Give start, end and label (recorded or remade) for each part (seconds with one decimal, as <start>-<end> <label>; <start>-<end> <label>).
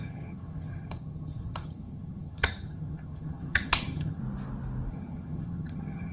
0.0-4.2 remade; 4.2-4.9 recorded; 4.9-6.1 remade